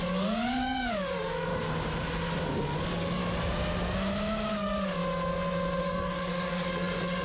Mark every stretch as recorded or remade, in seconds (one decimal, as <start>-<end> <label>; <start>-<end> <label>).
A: 0.0-1.5 remade; 1.5-2.8 recorded; 2.8-3.2 remade; 3.2-4.5 recorded; 4.5-5.0 remade; 5.0-5.8 recorded; 5.8-7.2 remade